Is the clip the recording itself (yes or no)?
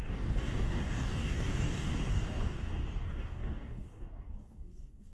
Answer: no